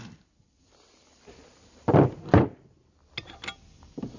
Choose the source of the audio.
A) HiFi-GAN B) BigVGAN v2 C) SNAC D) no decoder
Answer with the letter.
D